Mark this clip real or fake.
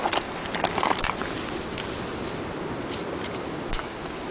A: real